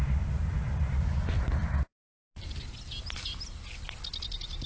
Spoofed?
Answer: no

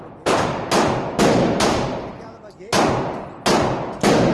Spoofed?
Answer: no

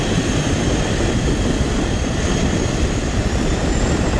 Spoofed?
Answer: no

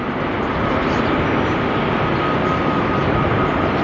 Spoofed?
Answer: no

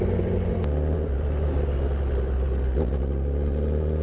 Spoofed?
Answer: no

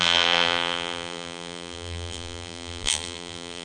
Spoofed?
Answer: yes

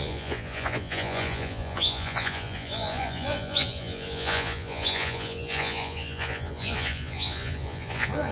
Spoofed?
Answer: yes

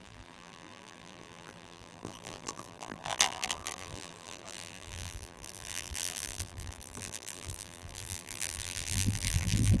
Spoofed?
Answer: yes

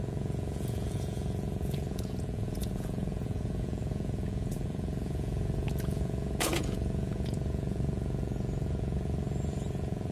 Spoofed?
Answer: yes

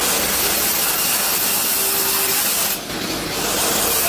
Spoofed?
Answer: no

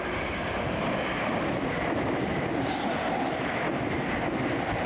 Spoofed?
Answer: no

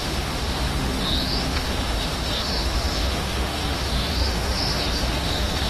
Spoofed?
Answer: yes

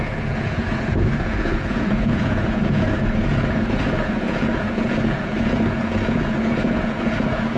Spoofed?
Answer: yes